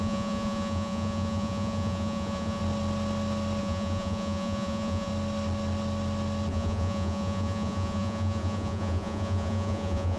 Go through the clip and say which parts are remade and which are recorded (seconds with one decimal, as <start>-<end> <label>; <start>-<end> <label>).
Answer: 0.0-2.6 remade; 2.6-3.6 recorded; 3.6-5.1 remade; 5.1-6.5 recorded; 6.5-10.2 remade